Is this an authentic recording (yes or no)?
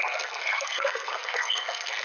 no